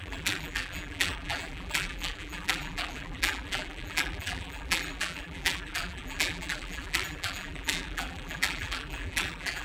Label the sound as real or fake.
fake